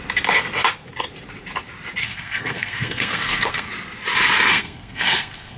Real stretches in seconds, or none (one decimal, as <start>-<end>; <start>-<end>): 0.0-2.0; 3.7-4.5

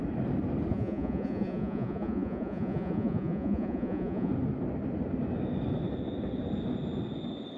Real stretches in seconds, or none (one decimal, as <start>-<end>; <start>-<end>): 0.0-0.7; 4.3-7.6